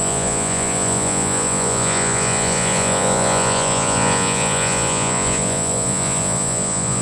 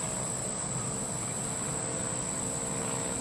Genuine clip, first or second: second